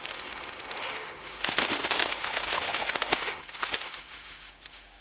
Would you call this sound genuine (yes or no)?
no